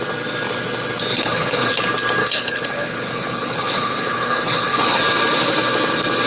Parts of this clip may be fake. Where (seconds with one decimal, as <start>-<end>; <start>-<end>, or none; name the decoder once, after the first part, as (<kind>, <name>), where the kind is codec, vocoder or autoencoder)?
1.1-1.7 (codec, HILCodec); 2.2-5.0